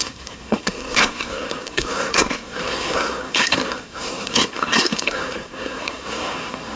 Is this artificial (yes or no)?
yes